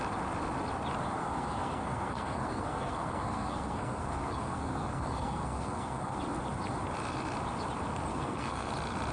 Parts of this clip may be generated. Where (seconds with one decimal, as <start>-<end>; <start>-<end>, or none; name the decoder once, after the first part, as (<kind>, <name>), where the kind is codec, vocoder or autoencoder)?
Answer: 1.2-6.2 (codec, SNAC); 8.1-8.7